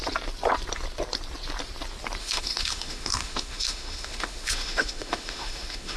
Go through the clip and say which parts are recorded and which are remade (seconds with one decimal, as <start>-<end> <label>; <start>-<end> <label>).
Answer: 0.0-2.2 recorded; 2.2-6.0 remade